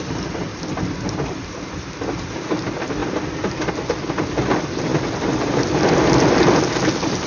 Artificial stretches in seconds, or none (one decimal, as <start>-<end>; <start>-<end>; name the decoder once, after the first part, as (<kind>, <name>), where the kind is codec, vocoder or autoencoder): none